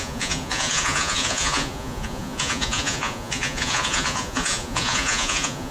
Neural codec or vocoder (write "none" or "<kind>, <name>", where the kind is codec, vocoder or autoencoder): vocoder, Vocos